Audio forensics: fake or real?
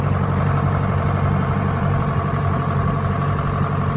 fake